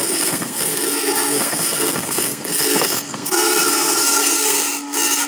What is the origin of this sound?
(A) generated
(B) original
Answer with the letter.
A